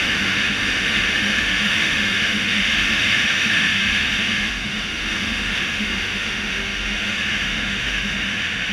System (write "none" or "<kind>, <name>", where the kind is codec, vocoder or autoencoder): autoencoder, DAC-VAE